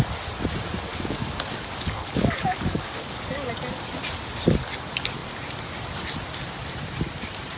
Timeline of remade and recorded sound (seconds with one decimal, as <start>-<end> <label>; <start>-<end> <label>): 0.0-0.9 recorded; 0.9-3.5 remade; 3.5-7.6 recorded